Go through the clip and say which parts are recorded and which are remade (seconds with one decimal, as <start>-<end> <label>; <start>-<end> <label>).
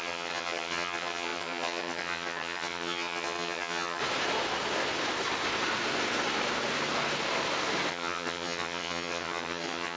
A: 0.0-4.0 remade; 4.0-7.9 recorded; 7.9-10.0 remade